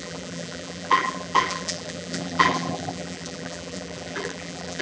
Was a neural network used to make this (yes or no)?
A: yes